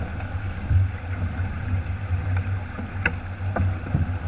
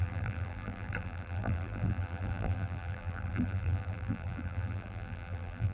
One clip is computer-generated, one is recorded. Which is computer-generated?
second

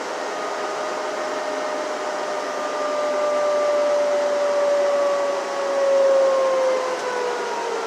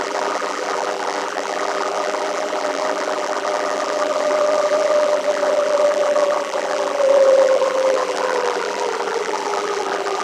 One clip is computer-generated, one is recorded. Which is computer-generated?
second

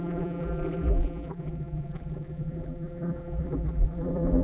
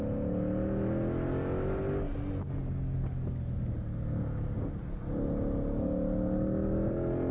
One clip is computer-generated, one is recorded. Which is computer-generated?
first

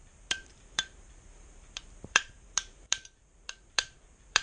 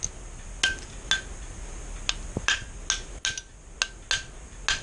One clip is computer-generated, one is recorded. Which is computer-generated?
first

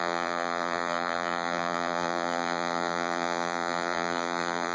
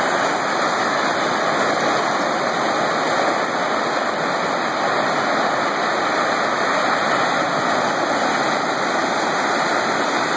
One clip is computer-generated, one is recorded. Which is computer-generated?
first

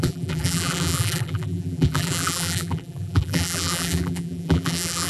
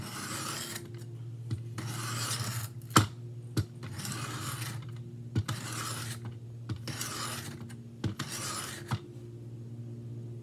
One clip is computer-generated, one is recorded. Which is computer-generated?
first